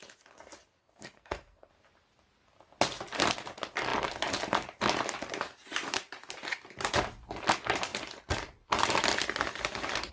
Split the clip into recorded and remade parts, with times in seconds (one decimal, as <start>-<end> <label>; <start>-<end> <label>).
0.0-0.8 recorded; 0.8-1.7 remade; 1.7-10.1 recorded